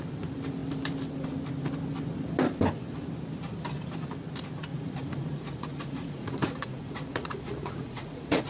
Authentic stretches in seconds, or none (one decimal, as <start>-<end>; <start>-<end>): 0.0-4.7